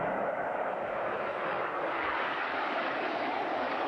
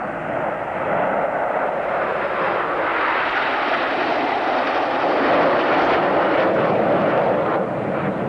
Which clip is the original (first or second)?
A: second